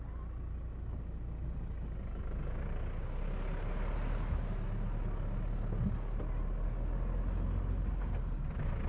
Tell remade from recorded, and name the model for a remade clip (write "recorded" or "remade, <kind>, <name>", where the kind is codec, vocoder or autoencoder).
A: recorded